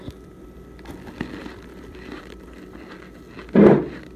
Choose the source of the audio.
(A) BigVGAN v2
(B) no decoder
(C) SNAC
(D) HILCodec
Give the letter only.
B